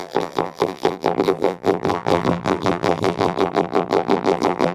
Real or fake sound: fake